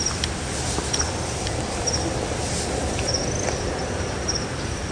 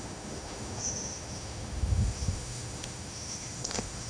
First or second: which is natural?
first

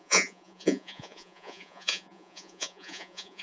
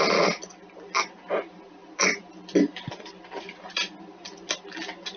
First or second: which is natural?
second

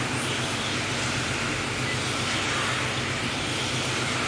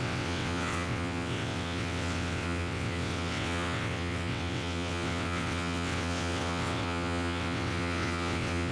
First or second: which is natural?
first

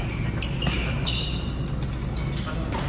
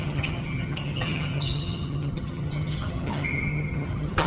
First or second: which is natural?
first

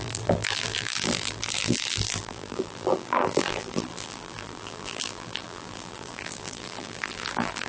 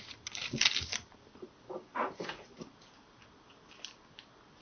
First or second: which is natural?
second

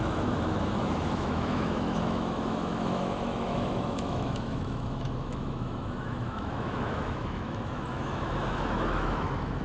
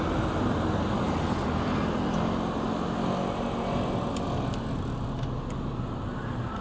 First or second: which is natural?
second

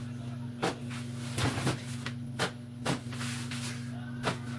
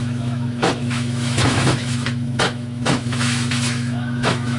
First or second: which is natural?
first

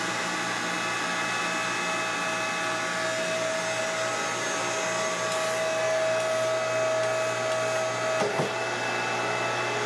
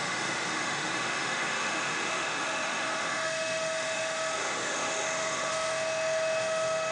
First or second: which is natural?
first